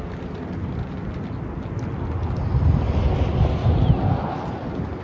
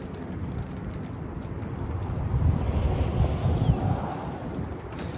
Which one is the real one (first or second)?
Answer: first